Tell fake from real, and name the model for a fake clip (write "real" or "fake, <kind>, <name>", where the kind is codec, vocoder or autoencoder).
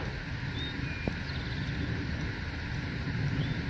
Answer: real